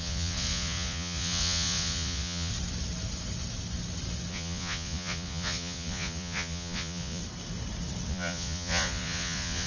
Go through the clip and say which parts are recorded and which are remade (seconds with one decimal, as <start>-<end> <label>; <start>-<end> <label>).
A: 0.0-2.5 remade; 2.5-4.3 recorded; 4.3-7.2 remade; 7.2-8.1 recorded; 8.1-9.7 remade